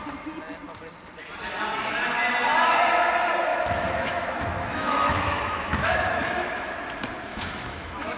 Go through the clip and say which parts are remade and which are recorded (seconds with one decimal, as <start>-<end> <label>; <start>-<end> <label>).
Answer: 0.0-3.5 recorded; 3.5-6.7 remade; 6.7-7.3 recorded; 7.3-8.2 remade